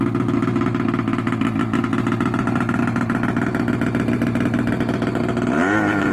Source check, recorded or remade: recorded